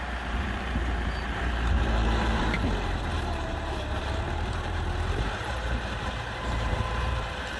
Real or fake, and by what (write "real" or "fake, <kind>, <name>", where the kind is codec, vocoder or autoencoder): fake, vocoder, BigVGAN v2